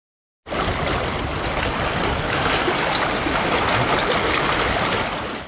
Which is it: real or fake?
real